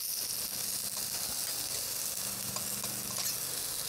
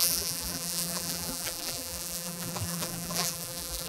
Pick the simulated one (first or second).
second